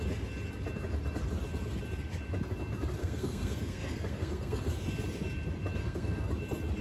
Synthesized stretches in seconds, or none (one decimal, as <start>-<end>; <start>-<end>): 3.0-4.6; 5.8-6.3